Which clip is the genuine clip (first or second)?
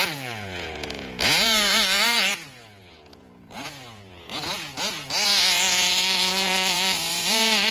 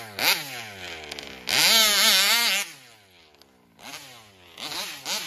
second